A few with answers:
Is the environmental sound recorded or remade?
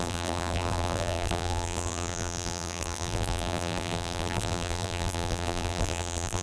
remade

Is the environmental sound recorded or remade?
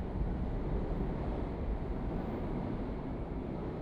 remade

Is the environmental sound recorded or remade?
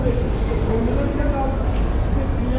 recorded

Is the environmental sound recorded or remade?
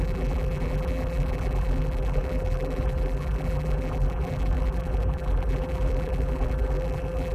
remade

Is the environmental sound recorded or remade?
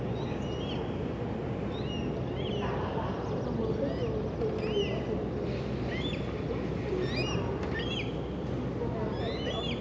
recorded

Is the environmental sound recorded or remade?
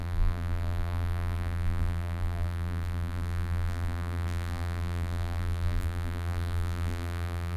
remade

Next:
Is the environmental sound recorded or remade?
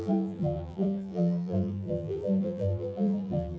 remade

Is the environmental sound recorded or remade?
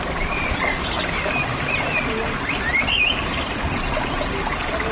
remade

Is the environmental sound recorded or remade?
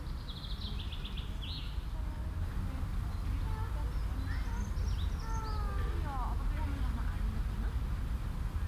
recorded